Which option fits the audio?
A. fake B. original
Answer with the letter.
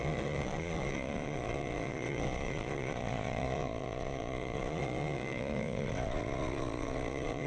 A